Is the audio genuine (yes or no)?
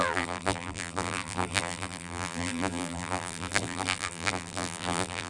no